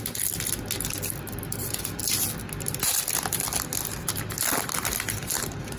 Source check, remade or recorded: recorded